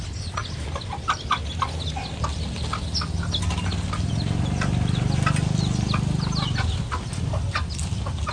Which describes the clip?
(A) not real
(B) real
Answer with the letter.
B